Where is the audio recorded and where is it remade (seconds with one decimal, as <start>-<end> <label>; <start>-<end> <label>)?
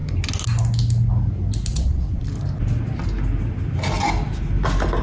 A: 0.0-1.7 recorded; 1.7-2.2 remade; 2.2-5.0 recorded